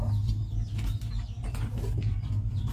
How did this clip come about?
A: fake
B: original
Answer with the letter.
B